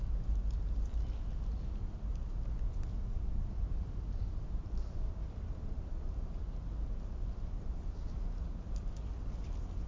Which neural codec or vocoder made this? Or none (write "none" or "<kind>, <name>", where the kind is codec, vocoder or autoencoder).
none